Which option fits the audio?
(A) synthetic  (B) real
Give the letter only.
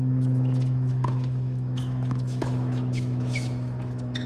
A